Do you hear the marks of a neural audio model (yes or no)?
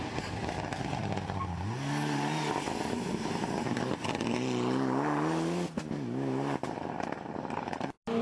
no